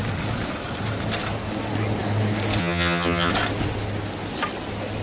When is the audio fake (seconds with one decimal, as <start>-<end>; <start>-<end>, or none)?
2.6-3.3

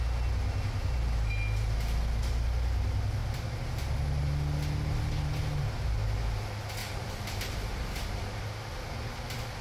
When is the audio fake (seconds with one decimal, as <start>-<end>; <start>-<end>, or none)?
6.8-8.4

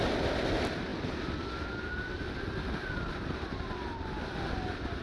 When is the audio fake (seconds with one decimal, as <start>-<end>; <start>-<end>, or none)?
none

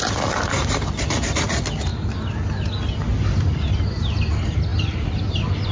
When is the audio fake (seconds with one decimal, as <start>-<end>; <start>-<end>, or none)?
none

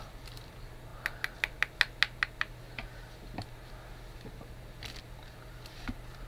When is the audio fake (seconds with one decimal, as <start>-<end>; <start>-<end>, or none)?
0.0-0.9; 4.3-6.3